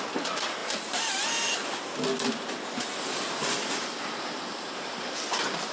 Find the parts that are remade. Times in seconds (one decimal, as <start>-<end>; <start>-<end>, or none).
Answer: none